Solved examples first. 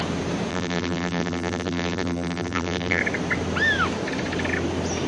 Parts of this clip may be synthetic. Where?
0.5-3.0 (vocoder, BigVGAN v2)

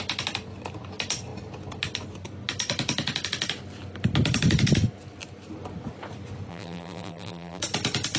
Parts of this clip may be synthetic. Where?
6.5-7.6 (vocoder, BigVGAN v2)